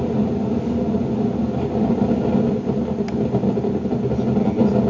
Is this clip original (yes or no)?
yes